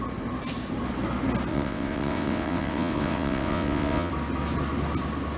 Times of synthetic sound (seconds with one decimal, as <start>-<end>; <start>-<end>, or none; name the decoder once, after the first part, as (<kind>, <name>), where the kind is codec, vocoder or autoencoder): 1.5-4.1 (vocoder, WaveNeXt)

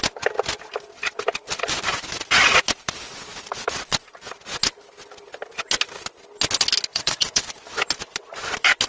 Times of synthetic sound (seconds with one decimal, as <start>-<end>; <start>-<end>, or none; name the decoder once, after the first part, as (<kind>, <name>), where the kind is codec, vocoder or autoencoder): 6.9-7.4 (vocoder, WaveNeXt)

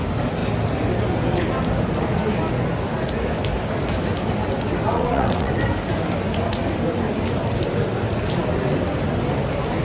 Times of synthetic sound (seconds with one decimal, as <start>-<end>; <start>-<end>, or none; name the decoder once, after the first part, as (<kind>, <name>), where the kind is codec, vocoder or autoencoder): 4.9-5.5 (vocoder, WaveNeXt)

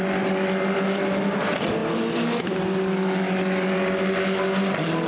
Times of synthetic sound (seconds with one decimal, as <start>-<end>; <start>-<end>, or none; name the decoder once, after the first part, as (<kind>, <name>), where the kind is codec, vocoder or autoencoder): none

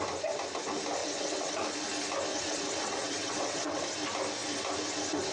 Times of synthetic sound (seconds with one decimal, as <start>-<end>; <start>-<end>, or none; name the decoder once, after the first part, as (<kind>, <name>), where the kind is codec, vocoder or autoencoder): 1.0-1.5 (vocoder, WaveNeXt); 2.3-3.8